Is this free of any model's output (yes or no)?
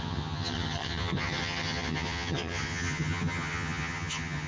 no